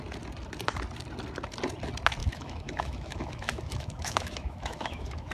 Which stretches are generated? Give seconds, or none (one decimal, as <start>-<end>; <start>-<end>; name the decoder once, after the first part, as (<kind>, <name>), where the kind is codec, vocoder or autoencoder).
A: 2.2-5.3 (autoencoder, DAC-VAE)